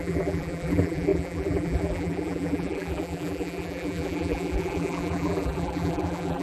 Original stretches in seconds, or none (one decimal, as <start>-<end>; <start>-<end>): none